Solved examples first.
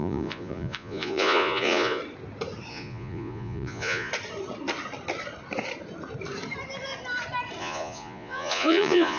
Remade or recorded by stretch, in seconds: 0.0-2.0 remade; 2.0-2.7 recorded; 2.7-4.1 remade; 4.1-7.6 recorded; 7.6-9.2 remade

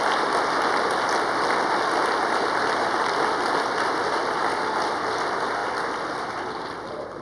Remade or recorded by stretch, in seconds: 0.0-7.2 recorded